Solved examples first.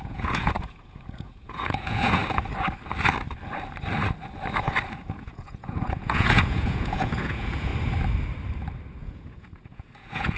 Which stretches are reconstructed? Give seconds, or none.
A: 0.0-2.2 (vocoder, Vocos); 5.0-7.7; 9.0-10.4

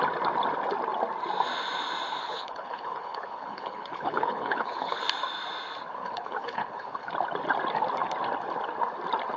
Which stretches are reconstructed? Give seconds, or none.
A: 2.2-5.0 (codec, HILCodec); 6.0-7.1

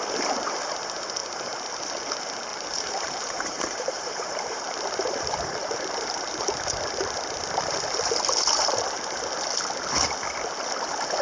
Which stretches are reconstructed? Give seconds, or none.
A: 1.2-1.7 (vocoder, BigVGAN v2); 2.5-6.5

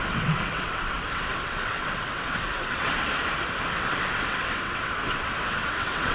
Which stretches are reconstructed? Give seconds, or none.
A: 0.0-2.9 (vocoder, WaveNeXt); 3.8-6.1